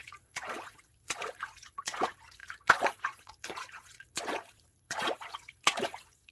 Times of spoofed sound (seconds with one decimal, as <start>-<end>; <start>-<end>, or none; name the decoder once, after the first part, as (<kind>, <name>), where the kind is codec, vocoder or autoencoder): 0.0-6.3 (vocoder, Vocos)